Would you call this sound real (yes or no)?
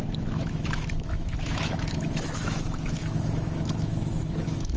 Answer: no